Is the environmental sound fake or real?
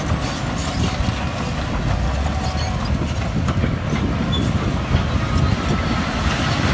real